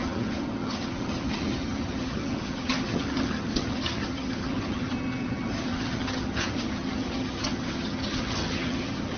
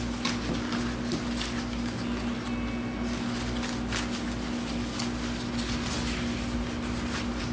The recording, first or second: second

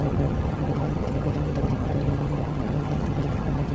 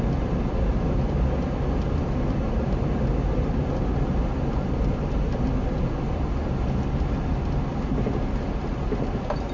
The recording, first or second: second